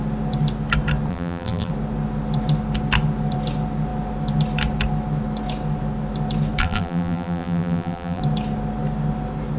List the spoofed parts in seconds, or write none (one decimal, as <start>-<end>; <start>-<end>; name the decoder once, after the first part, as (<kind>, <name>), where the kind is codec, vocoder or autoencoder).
1.1-1.7 (vocoder, BigVGAN v2); 6.6-8.2